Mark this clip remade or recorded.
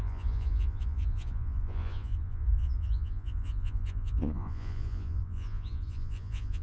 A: remade